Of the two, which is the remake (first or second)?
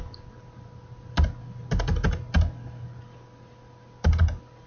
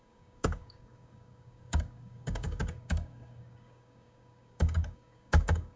second